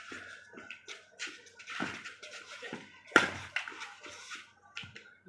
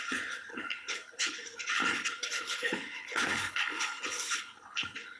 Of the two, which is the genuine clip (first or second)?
first